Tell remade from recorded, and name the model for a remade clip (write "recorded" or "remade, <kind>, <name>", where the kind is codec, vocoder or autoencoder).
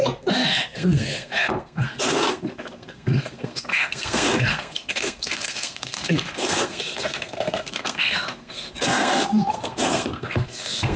remade, codec, SNAC